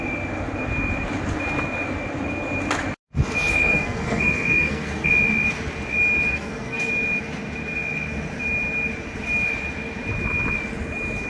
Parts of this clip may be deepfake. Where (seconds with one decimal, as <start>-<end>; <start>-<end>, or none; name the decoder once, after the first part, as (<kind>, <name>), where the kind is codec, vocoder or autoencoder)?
3.5-5.1 (codec, SNAC); 6.3-6.9